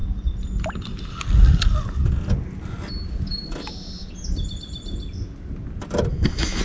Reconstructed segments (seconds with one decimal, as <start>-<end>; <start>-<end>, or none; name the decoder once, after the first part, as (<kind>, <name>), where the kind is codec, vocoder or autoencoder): 6.1-6.6 (autoencoder, DAC-VAE)